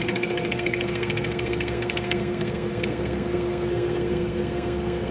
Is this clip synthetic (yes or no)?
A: yes